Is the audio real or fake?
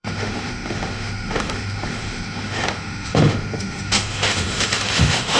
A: fake